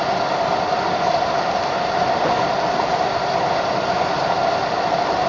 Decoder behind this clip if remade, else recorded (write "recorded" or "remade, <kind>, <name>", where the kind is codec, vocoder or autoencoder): recorded